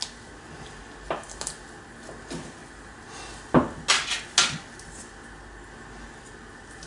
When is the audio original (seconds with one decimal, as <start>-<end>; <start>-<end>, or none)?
0.0-6.9